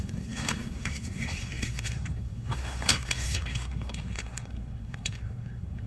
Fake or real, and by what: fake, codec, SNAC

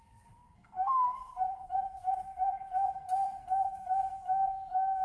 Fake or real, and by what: fake, codec, SNAC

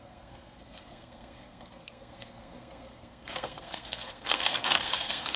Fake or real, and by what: fake, codec, SNAC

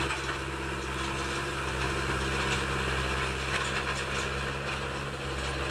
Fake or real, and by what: real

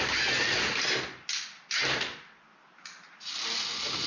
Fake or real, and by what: real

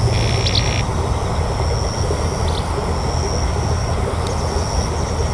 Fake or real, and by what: real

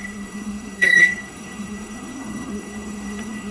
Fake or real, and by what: fake, codec, SNAC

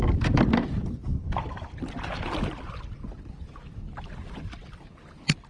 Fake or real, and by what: real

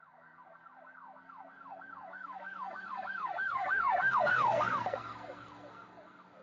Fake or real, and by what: fake, codec, SNAC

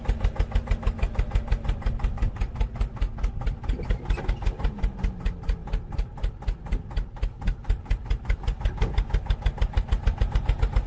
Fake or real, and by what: real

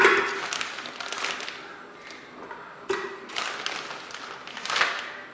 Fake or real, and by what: real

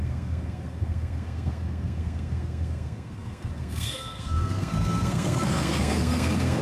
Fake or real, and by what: fake, codec, SNAC